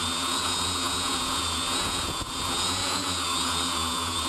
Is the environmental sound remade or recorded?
remade